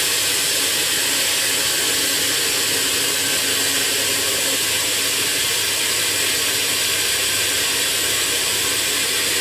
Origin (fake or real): real